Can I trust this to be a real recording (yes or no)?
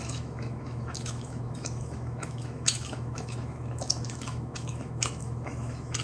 no